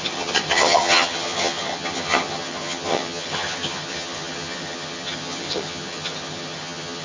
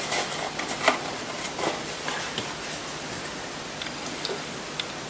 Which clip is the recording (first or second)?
second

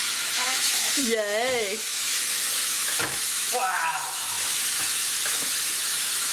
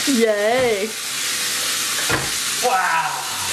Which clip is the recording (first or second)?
second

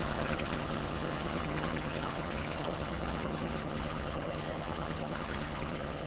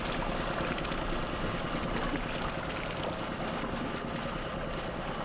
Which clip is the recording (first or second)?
second